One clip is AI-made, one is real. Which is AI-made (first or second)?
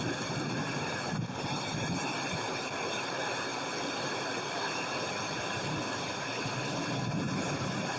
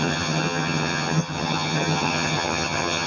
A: second